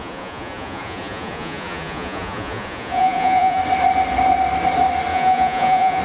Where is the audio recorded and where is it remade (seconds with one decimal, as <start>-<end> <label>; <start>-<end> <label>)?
0.0-3.6 remade; 3.6-5.1 recorded; 5.1-6.0 remade